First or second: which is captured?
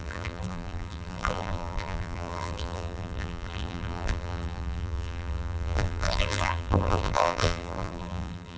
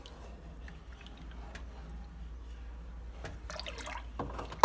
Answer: second